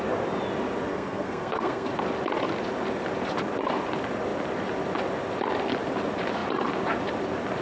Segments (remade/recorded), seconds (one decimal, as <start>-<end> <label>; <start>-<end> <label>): 0.0-0.9 recorded; 0.9-1.9 remade; 1.9-7.6 recorded